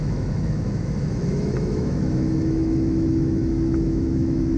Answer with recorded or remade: remade